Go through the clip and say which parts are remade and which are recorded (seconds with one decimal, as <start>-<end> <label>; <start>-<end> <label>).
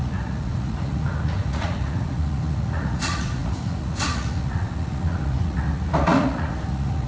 0.0-7.1 remade